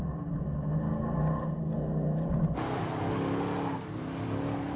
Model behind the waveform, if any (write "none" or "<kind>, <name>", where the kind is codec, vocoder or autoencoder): none